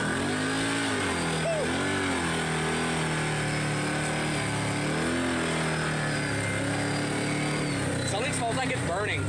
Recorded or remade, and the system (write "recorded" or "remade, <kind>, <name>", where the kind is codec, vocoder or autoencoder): recorded